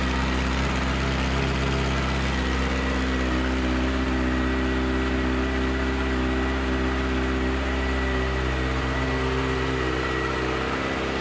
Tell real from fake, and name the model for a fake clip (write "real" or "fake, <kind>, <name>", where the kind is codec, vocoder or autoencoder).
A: real